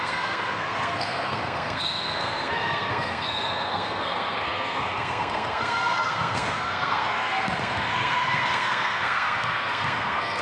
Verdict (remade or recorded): remade